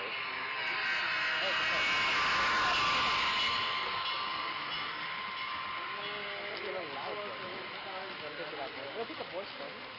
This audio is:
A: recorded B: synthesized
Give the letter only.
A